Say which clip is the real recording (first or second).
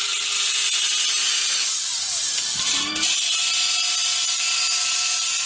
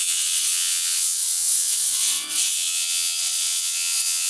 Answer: first